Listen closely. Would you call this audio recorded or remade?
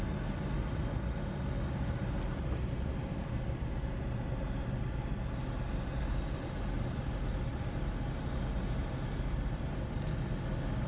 recorded